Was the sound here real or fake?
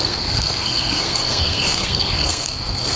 fake